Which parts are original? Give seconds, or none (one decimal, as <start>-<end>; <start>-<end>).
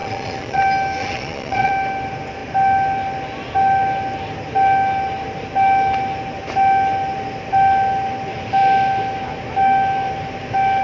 0.6-1.0; 1.7-10.8